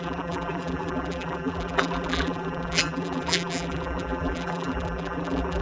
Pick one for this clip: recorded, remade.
remade